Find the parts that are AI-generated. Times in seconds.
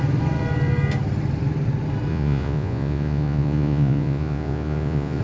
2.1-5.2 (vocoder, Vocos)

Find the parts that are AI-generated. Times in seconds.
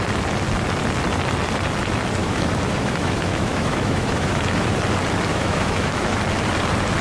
2.2-4.7 (autoencoder, DAC-VAE); 5.3-6.2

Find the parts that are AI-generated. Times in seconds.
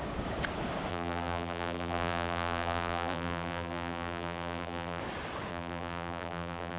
0.9-5.0 (vocoder, BigVGAN v2); 5.5-6.8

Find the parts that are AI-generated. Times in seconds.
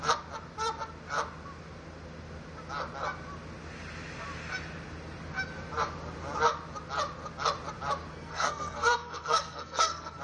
8.1-10.2 (codec, SNAC)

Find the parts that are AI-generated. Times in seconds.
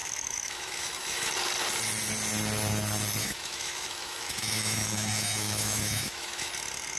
0.0-1.3 (autoencoder, DAC-VAE); 3.2-6.5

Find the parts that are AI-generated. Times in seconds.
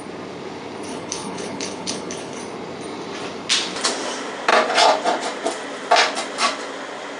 0.9-2.4 (codec, HILCodec)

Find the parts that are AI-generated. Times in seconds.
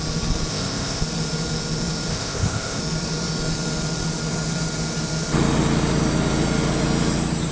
0.5-1.0 (codec, ZipCodec); 2.1-2.8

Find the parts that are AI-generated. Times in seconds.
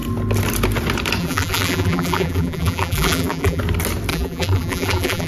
1.2-3.6 (vocoder, BigVGAN v2); 4.1-5.3